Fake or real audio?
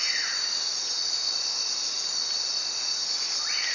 real